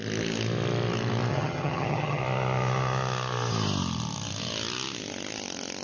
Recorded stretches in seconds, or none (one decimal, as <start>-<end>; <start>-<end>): 0.0-1.3; 2.2-5.8